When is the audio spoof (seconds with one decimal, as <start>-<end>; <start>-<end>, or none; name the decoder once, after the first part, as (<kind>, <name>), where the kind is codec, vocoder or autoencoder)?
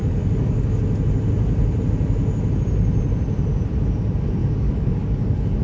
0.0-0.8 (codec, DAC); 4.4-5.6